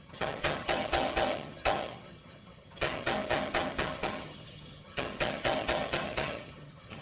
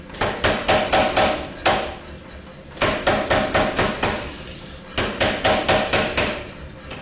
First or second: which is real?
second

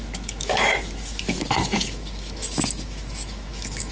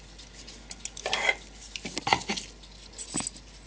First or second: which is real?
second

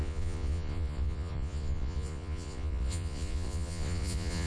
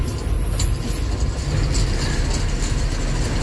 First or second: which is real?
second